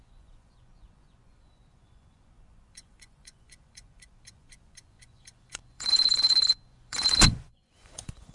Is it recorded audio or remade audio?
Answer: remade